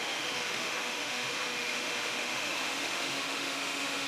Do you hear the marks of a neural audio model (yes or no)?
yes